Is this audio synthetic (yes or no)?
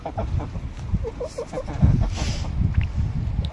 no